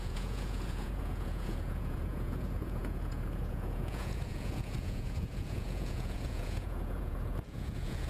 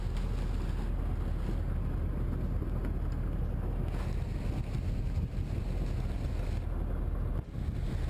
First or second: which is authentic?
second